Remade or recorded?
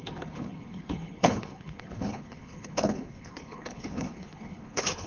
remade